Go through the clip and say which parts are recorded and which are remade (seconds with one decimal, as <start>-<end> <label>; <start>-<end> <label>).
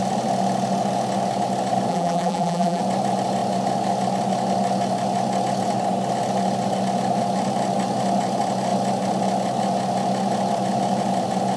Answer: 0.0-1.9 recorded; 1.9-2.8 remade; 2.8-11.6 recorded